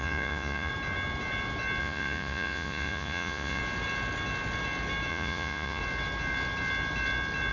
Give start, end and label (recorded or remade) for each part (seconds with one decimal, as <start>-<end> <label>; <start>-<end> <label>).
0.0-0.7 remade; 0.7-1.8 recorded; 1.8-3.6 remade; 3.6-5.1 recorded; 5.1-5.8 remade; 5.8-7.5 recorded